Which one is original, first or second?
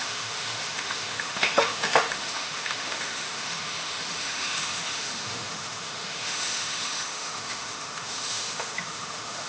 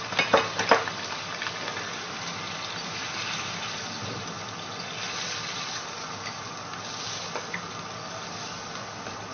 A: second